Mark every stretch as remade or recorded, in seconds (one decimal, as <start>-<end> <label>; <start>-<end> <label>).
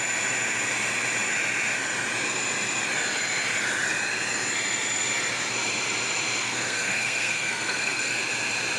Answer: 0.0-6.4 recorded; 6.4-8.2 remade; 8.2-8.8 recorded